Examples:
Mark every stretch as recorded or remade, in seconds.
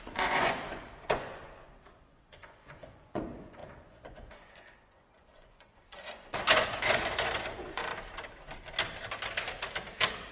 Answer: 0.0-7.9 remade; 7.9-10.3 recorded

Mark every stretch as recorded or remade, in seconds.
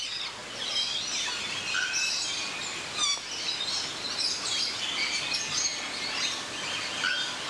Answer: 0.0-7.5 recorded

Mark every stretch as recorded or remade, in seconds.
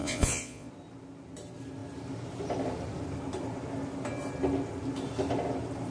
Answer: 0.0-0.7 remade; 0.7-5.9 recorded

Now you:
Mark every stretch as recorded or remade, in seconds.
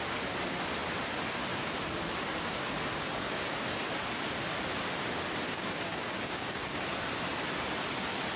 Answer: 0.0-5.5 recorded; 5.5-6.8 remade; 6.8-8.4 recorded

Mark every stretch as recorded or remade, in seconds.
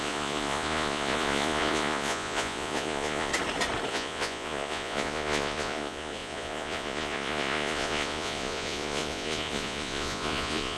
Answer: 0.0-3.3 remade; 3.3-3.9 recorded; 3.9-10.8 remade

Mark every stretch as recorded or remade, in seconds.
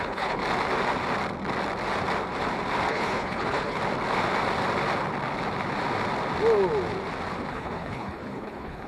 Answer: 0.0-0.4 remade; 0.4-2.9 recorded; 2.9-3.8 remade; 3.8-7.5 recorded; 7.5-8.9 remade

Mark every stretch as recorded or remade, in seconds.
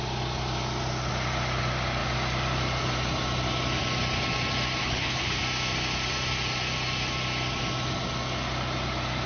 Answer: 0.0-4.8 recorded; 4.8-5.4 remade; 5.4-9.3 recorded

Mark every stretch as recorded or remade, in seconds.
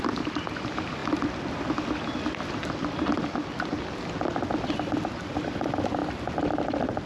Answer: 0.0-3.7 remade; 3.7-5.4 recorded; 5.4-6.0 remade; 6.0-7.1 recorded